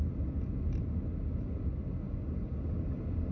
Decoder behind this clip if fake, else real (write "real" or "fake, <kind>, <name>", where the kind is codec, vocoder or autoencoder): real